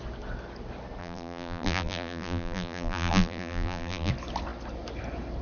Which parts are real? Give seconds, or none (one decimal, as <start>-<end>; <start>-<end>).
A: 0.0-1.0; 4.1-5.4